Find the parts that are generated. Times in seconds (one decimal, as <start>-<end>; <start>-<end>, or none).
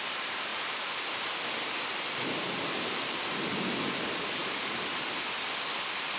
0.5-3.1; 4.4-4.9